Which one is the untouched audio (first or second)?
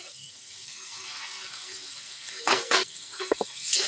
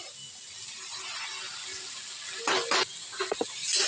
second